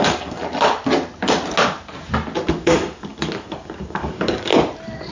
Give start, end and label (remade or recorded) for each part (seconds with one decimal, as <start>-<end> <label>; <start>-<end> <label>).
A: 0.0-0.4 remade; 0.4-2.5 recorded; 2.5-4.5 remade; 4.5-5.1 recorded